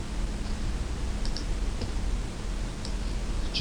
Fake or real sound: real